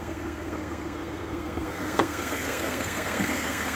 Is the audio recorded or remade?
remade